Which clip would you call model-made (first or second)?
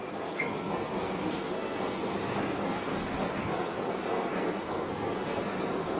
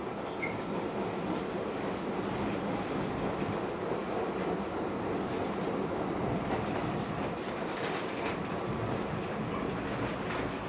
first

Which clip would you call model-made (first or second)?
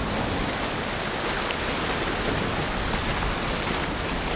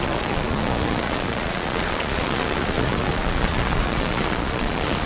second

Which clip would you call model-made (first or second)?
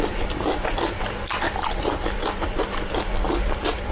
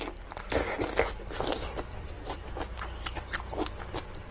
first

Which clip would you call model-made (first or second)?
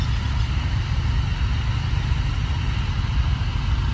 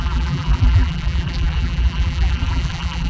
second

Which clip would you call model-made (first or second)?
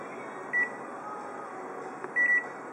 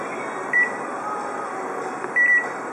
second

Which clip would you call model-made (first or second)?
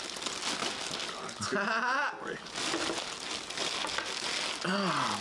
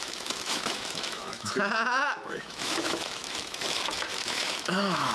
second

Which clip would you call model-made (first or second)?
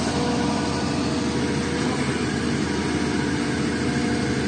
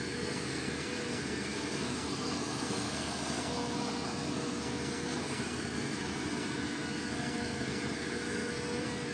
second